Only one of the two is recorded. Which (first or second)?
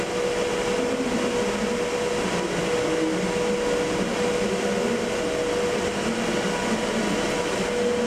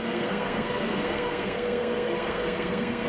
first